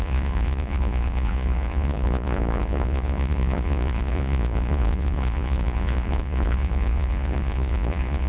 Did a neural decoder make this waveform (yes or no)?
yes